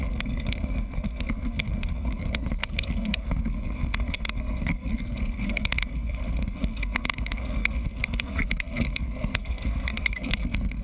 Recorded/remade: remade